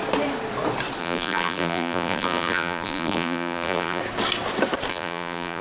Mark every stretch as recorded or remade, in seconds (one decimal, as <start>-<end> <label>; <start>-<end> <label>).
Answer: 0.0-1.0 recorded; 1.0-4.0 remade; 4.0-4.9 recorded; 4.9-5.6 remade